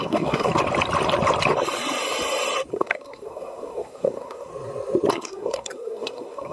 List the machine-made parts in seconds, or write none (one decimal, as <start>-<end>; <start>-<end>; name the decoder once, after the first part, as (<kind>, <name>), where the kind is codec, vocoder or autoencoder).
0.0-0.5 (codec, SNAC); 2.7-4.5; 5.1-6.5